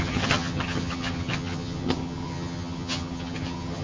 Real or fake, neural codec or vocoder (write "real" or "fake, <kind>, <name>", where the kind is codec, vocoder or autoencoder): fake, vocoder, HiFi-GAN